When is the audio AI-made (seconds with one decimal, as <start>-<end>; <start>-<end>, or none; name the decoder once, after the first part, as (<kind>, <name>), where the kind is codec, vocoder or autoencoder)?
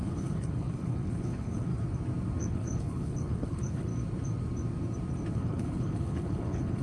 0.0-1.7 (codec, HILCodec); 2.4-3.9; 5.3-6.8